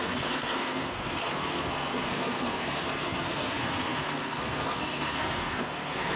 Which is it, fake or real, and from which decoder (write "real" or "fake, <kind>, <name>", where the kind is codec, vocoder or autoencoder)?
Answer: fake, codec, SNAC